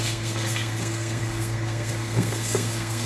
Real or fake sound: fake